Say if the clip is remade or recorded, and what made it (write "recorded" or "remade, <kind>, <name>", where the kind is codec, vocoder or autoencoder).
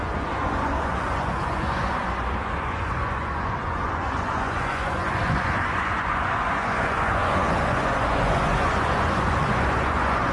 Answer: remade, vocoder, Vocos